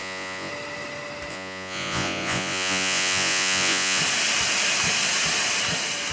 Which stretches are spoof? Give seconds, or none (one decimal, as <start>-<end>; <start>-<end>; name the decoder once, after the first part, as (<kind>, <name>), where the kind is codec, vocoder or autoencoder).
0.0-0.5 (vocoder, Vocos); 1.3-4.0